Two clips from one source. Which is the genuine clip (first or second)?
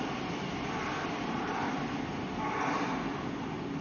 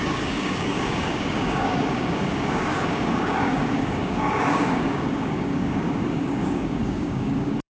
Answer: first